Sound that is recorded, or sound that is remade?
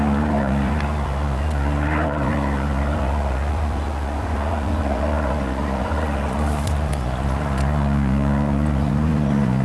remade